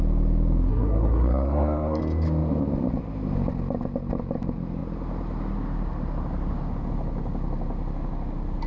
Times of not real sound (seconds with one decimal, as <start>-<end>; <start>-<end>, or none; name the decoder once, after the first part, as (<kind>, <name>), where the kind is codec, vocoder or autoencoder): 0.7-2.0 (codec, SNAC)

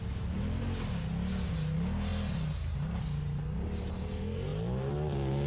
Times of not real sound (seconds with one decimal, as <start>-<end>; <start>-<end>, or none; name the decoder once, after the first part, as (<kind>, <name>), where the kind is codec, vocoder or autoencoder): none

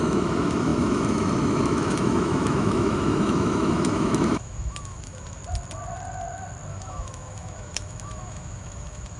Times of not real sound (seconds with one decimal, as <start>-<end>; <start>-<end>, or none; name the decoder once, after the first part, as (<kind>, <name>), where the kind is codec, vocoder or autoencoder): 0.0-5.4 (autoencoder, DAC-VAE); 6.7-9.2